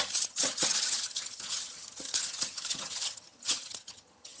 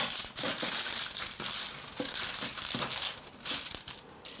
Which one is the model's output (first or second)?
first